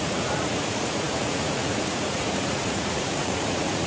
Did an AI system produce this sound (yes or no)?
yes